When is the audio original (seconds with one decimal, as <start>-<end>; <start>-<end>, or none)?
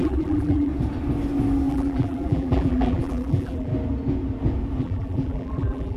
0.7-1.7; 3.7-4.8